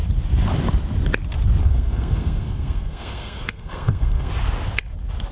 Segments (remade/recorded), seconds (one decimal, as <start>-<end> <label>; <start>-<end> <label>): 0.0-1.6 recorded; 1.6-4.3 remade; 4.3-5.3 recorded